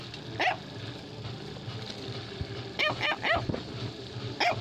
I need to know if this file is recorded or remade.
recorded